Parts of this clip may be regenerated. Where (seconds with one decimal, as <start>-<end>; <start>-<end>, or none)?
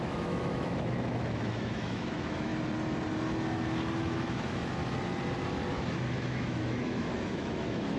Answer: 0.0-2.5; 4.0-4.8; 5.7-8.0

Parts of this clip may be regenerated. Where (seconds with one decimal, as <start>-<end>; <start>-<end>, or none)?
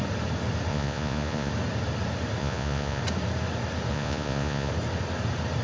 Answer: 0.7-1.5; 2.4-3.0; 3.9-4.7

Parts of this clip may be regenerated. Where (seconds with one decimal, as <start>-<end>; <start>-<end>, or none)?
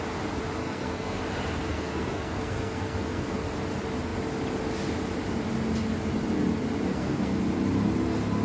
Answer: 0.6-1.2; 1.6-3.4; 6.9-7.4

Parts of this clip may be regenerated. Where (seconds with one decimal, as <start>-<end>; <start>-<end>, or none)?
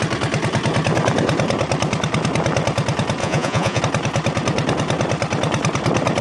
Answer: 3.2-3.8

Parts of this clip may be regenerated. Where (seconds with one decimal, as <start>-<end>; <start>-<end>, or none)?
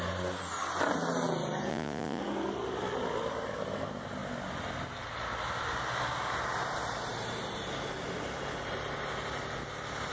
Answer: 1.7-2.2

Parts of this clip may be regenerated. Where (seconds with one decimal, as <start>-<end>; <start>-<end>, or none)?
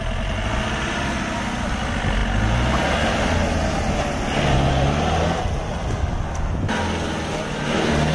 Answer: none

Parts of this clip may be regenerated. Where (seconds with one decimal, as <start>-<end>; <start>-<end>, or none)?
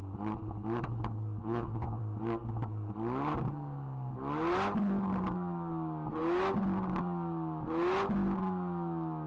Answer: 1.4-2.0